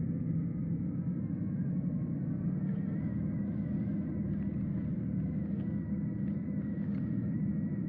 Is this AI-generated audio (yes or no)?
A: no